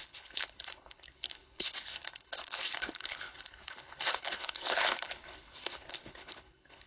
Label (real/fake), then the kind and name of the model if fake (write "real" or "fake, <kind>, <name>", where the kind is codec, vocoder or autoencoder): fake, codec, HILCodec